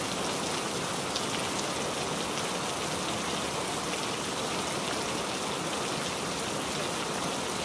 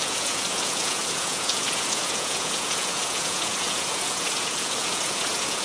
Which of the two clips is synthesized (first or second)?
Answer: second